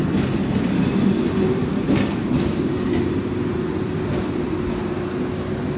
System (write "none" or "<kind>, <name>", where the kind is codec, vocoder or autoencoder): none